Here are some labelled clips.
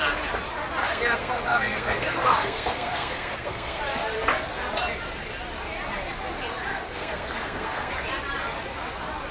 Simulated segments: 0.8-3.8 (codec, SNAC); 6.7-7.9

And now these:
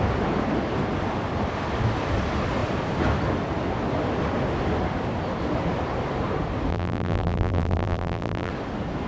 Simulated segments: 6.7-8.5 (vocoder, BigVGAN v2)

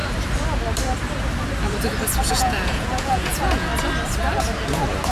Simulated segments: 2.3-3.7 (vocoder, Vocos)

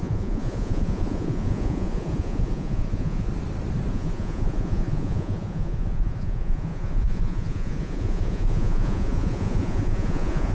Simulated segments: 0.0-3.3 (vocoder, Vocos); 3.9-10.5

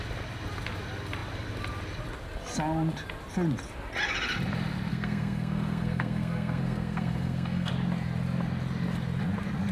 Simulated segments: 4.9-7.7 (codec, SNAC)

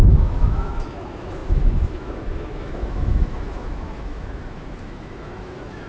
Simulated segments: 0.0-5.9 (autoencoder, DAC-VAE)

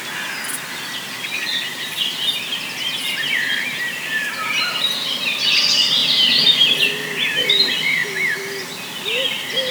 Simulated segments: 1.5-5.5 (vocoder, BigVGAN v2); 6.0-6.7